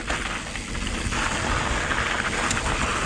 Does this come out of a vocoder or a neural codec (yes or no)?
no